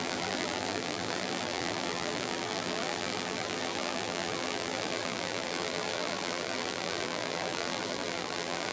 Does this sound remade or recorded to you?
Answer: remade